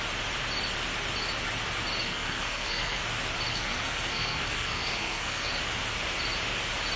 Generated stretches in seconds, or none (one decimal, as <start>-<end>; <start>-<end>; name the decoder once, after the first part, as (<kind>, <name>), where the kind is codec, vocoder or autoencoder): 2.0-3.0 (codec, SNAC); 3.5-5.5